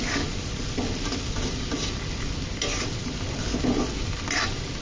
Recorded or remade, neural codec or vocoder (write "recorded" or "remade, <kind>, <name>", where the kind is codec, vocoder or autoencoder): remade, vocoder, BigVGAN v2